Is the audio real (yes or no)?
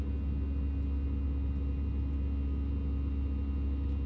yes